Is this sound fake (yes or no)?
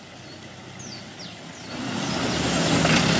no